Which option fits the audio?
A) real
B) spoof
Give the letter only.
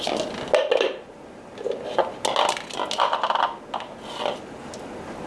A